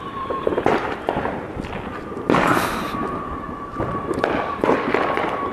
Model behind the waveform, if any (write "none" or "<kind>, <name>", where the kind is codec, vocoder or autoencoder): none